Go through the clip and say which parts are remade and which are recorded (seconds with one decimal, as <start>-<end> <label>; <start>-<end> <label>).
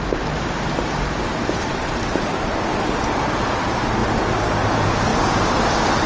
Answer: 0.0-2.7 remade; 2.7-3.4 recorded; 3.4-4.0 remade; 4.0-4.6 recorded; 4.6-5.1 remade; 5.1-6.1 recorded